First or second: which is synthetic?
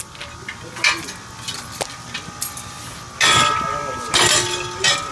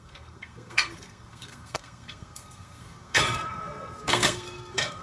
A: second